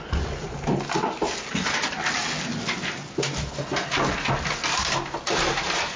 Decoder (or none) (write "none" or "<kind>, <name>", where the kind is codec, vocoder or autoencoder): none